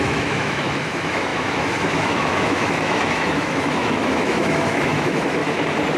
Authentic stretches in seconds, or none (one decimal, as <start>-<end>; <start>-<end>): 5.4-6.0